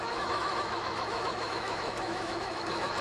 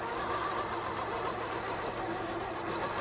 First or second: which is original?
second